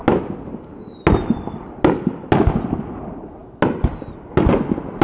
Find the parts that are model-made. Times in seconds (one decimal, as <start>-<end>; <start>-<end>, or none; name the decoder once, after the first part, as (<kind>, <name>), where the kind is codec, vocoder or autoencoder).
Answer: none